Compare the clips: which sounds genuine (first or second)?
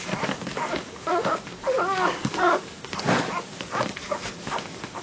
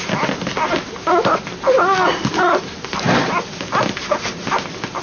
second